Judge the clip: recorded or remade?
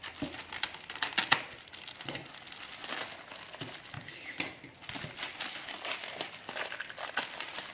recorded